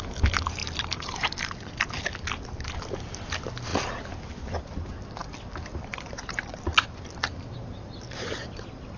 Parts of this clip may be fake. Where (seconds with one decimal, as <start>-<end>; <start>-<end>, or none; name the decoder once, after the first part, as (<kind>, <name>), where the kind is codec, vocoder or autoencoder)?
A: none